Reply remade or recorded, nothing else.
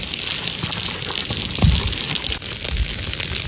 recorded